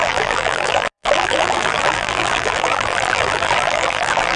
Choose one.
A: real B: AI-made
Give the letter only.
B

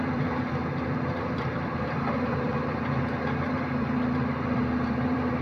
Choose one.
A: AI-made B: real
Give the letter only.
A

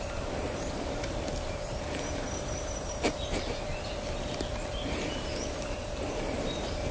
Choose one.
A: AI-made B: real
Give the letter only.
A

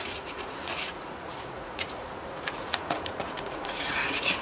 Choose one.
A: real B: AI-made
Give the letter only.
B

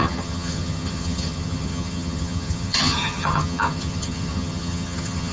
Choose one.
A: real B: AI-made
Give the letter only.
B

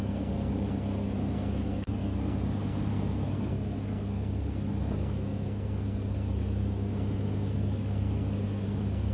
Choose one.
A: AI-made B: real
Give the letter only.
A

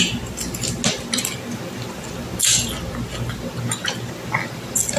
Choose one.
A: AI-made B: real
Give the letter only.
B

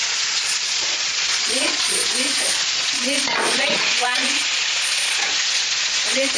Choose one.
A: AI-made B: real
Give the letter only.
A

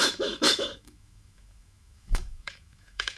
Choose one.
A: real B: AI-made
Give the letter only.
B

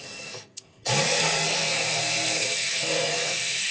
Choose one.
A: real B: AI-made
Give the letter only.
B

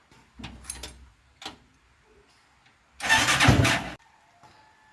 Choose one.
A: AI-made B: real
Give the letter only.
B